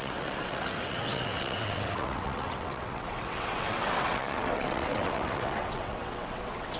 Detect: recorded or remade remade